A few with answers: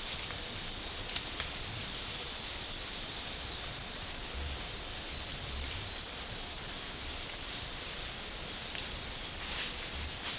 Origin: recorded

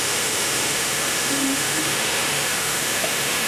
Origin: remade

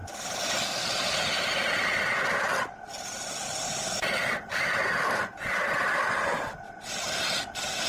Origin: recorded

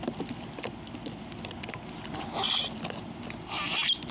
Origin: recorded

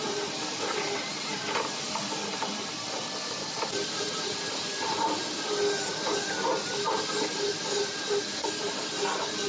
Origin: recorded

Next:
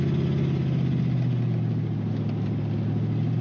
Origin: recorded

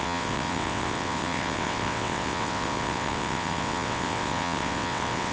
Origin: remade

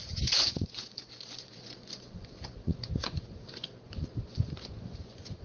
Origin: remade